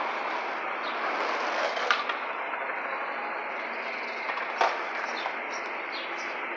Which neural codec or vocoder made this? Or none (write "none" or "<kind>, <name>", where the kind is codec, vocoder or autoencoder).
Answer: none